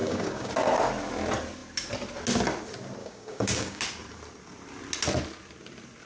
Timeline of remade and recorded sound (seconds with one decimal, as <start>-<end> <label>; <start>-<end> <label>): 0.0-0.5 remade; 0.5-3.0 recorded; 3.0-3.8 remade; 3.8-6.1 recorded

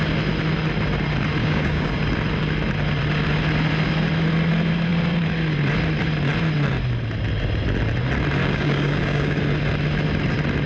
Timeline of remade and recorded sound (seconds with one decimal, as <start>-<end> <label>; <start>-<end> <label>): 0.0-1.4 recorded; 1.4-2.0 remade; 2.0-8.4 recorded; 8.4-9.4 remade; 9.4-10.7 recorded

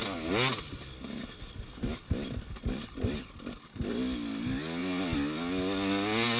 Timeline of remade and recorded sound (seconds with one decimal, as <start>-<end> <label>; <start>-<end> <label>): 0.0-6.4 recorded

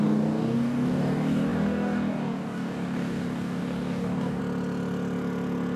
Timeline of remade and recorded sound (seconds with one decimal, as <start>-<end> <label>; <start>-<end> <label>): 0.0-4.4 remade; 4.4-5.8 recorded

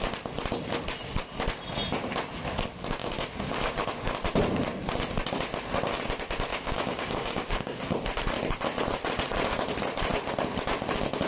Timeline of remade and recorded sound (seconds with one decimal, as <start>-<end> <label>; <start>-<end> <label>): 0.0-3.0 recorded; 3.0-3.9 remade; 3.9-6.5 recorded; 6.5-7.8 remade; 7.8-11.3 recorded

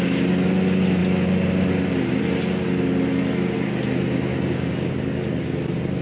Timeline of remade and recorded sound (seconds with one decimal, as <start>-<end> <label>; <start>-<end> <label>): 0.0-4.3 recorded; 4.3-4.9 remade; 4.9-6.0 recorded